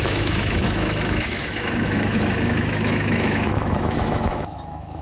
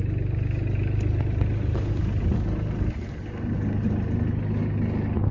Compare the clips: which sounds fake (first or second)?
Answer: first